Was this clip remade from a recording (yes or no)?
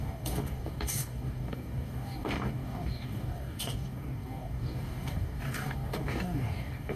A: yes